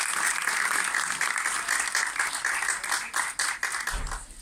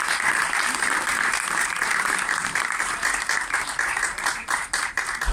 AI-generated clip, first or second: second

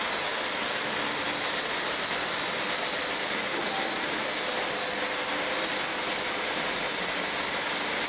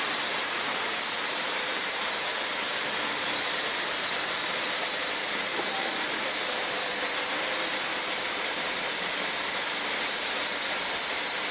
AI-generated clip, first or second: second